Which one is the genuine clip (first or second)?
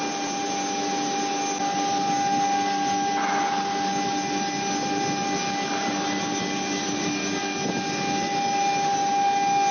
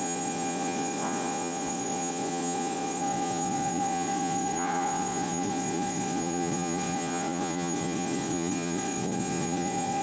first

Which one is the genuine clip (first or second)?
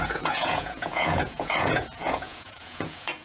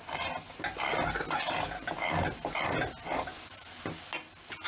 second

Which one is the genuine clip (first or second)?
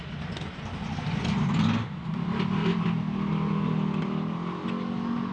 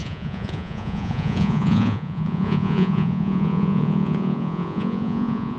first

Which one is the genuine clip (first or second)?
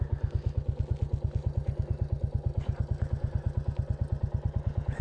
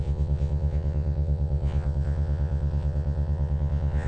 first